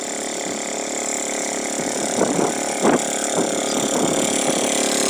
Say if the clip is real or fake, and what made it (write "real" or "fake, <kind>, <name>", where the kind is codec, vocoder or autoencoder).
real